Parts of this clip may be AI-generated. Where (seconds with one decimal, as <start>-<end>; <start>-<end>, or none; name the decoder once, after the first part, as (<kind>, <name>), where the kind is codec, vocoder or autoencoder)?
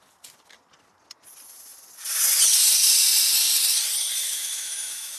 4.2-5.2 (autoencoder, DAC-VAE)